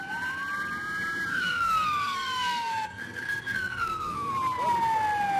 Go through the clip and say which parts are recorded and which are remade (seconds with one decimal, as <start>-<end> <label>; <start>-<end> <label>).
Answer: 0.0-1.3 recorded; 1.3-4.3 remade; 4.3-5.4 recorded